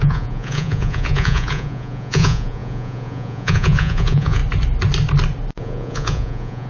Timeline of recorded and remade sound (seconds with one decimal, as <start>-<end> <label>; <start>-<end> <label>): 0.0-4.4 remade; 4.4-5.6 recorded; 5.6-6.7 remade